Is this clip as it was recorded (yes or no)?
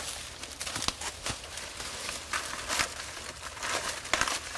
yes